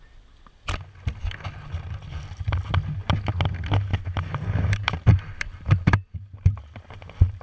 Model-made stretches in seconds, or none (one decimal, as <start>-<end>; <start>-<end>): 3.9-6.8